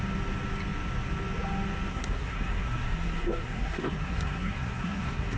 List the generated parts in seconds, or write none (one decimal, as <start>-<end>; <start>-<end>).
1.9-5.4